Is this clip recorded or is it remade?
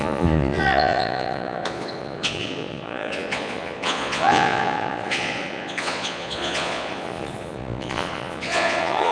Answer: remade